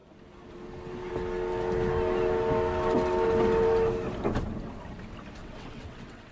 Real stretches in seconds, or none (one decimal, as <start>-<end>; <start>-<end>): 0.0-5.4

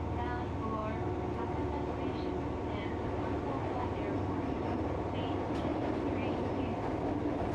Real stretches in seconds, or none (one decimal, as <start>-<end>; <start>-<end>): 0.0-5.7; 6.6-7.5

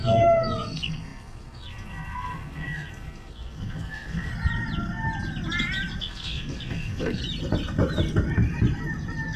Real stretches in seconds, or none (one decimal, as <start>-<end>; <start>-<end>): 4.3-6.0; 7.2-9.4

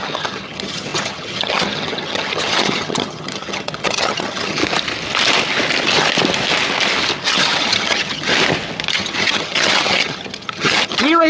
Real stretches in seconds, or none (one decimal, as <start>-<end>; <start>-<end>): 4.6-7.2; 8.3-8.9

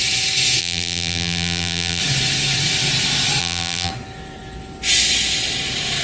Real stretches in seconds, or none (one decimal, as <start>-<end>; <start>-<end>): 0.0-0.6; 2.0-3.4; 3.9-6.0

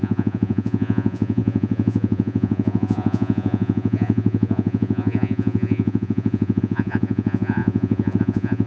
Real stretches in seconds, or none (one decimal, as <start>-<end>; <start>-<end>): none

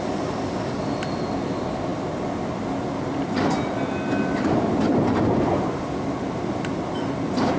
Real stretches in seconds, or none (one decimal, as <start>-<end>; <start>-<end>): 0.0-7.6